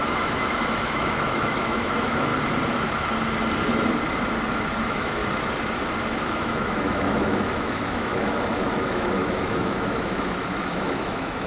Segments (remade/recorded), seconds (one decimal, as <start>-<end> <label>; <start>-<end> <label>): 0.0-2.3 remade; 2.3-4.8 recorded; 4.8-5.2 remade; 5.2-6.2 recorded; 6.2-11.5 remade